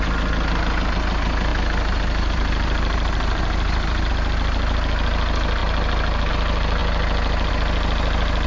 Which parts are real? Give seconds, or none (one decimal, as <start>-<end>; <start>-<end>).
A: 0.0-1.5; 4.1-8.5